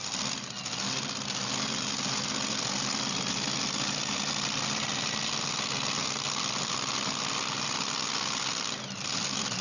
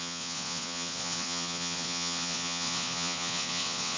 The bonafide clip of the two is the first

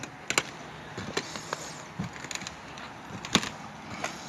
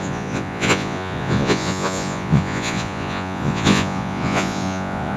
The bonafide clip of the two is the first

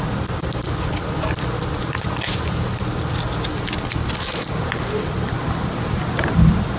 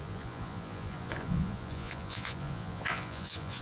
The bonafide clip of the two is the first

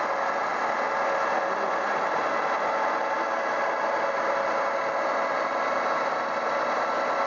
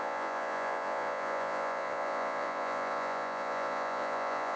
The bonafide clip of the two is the first